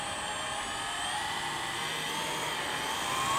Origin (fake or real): real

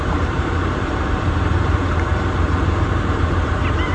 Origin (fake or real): fake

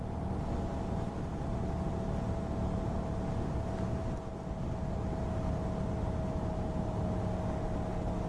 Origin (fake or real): real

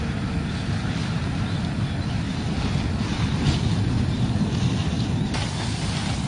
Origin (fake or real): real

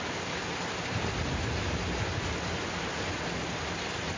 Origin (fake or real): real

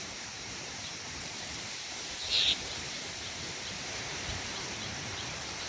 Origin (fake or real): fake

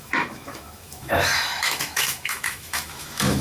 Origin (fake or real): fake